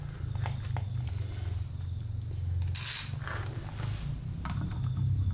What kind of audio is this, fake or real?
real